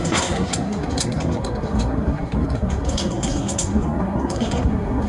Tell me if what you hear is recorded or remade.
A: remade